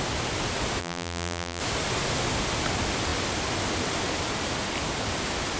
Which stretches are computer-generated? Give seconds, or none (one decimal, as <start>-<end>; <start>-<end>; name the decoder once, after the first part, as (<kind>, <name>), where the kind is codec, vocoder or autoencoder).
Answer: 0.8-1.6 (vocoder, BigVGAN v2)